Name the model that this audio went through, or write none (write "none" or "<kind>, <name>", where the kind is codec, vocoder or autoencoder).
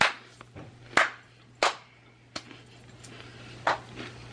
none